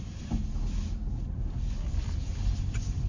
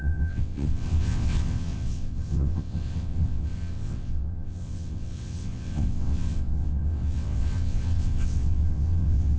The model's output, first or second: second